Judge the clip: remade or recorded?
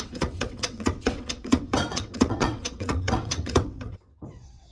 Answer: remade